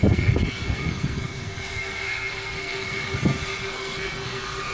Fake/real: fake